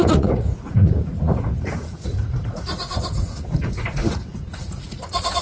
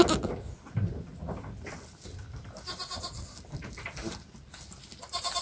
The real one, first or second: second